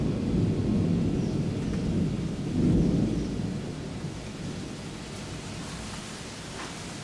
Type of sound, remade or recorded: recorded